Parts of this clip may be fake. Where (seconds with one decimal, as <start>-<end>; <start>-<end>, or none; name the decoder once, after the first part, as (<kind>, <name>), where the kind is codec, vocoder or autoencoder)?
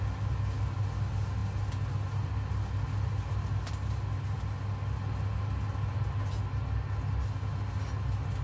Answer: none